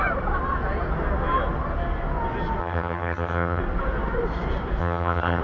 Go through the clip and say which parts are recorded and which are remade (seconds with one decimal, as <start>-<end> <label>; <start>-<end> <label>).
0.0-2.6 recorded; 2.6-3.6 remade; 3.6-4.8 recorded; 4.8-5.4 remade